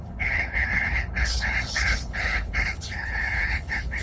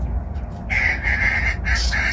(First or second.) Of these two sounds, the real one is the second